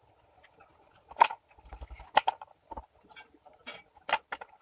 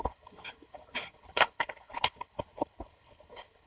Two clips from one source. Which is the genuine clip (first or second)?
first